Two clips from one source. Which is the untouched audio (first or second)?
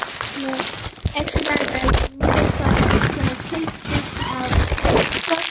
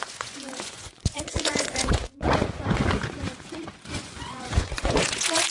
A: first